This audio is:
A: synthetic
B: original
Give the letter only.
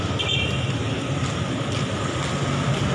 B